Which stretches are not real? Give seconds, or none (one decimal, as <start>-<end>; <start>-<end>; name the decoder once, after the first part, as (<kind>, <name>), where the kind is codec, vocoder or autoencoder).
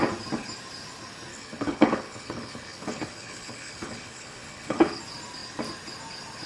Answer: 1.3-5.0 (codec, HILCodec)